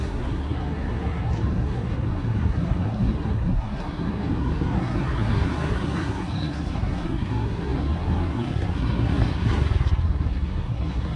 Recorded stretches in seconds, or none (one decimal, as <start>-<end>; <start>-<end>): none

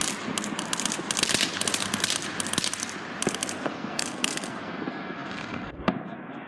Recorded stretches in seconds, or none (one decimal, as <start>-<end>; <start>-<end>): 0.0-3.7

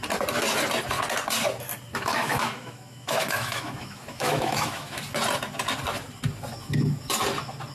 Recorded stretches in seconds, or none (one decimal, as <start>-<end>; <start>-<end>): 0.0-1.9; 5.0-7.7

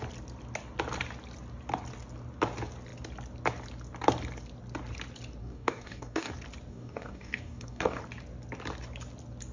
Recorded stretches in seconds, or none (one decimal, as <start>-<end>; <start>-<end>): 0.0-5.4; 6.3-6.7; 8.0-9.5

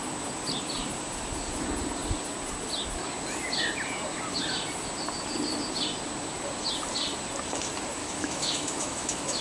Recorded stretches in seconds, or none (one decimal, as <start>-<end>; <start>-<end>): 0.0-8.0

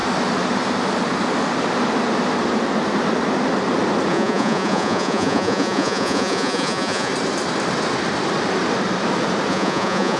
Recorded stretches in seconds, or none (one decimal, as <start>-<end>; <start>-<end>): 0.0-4.1; 7.1-9.5

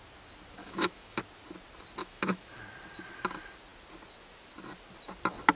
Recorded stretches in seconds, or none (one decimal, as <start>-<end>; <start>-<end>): 0.0-0.6; 1.2-2.0; 2.6-5.6